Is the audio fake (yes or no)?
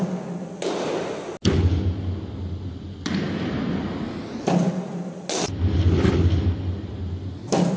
no